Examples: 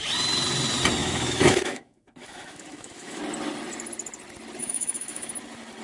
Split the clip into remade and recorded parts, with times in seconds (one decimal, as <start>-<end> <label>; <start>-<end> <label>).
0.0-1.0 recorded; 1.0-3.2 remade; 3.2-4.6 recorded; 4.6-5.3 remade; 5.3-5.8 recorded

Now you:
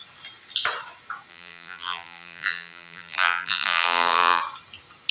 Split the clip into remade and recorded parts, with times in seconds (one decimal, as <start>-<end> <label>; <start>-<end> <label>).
0.0-1.3 recorded; 1.3-4.4 remade; 4.4-5.1 recorded

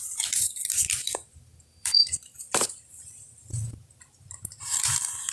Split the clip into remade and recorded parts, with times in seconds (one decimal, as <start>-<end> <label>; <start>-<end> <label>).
0.0-5.3 remade

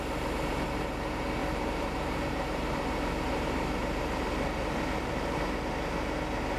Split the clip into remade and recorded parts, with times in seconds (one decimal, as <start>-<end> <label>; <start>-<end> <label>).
0.0-0.5 remade; 0.5-1.4 recorded; 1.4-5.4 remade; 5.4-6.6 recorded